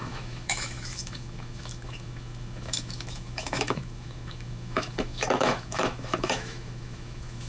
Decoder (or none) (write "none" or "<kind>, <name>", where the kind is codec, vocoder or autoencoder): autoencoder, DAC-VAE